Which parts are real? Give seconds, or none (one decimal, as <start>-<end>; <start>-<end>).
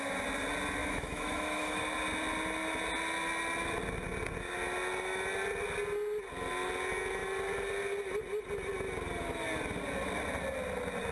0.0-0.8; 1.8-11.1